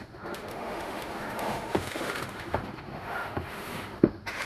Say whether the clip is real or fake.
fake